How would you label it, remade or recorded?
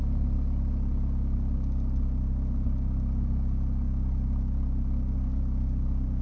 recorded